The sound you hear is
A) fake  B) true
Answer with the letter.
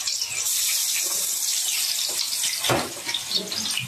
B